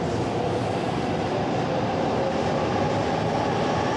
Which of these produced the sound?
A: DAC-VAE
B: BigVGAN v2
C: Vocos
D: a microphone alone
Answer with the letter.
D